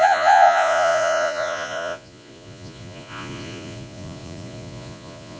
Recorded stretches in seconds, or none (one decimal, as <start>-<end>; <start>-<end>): none